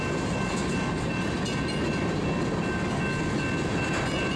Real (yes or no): yes